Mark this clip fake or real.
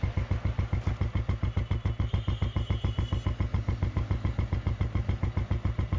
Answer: real